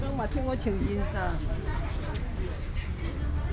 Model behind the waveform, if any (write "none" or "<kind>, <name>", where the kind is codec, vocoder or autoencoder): none